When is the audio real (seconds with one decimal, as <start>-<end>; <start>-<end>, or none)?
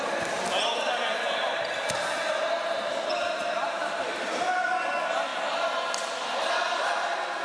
0.0-7.4